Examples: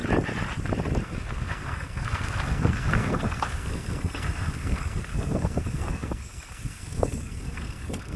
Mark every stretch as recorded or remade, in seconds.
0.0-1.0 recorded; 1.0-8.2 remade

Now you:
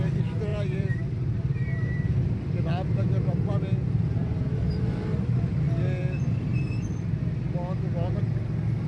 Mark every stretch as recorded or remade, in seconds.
0.0-0.5 recorded; 0.5-3.6 remade; 3.6-8.9 recorded